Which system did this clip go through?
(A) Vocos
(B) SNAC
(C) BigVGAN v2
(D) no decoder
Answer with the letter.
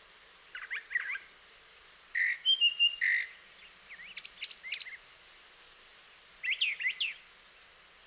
D